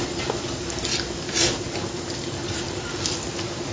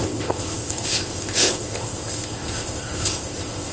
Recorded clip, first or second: first